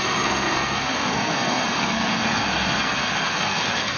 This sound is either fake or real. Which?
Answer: fake